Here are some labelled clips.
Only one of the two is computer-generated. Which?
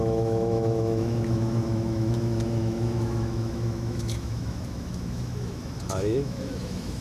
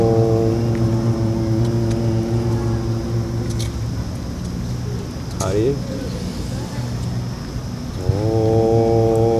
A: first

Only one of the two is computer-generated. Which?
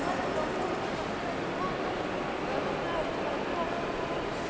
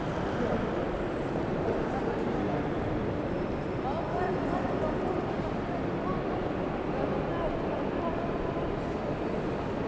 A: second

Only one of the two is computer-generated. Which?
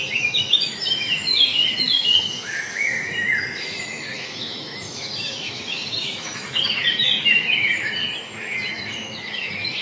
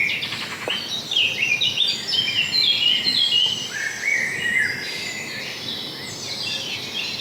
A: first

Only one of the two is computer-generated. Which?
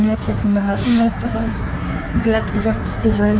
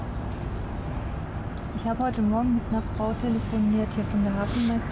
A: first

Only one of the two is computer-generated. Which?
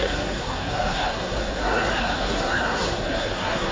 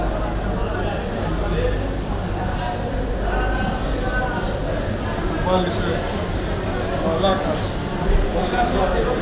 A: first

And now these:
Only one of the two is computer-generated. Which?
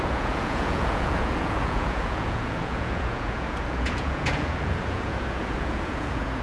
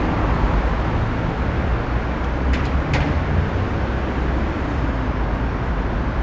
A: first